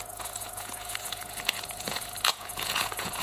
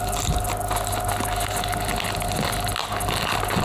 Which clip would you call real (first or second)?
second